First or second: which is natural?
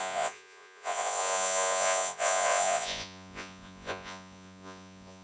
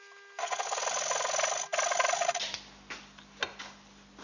second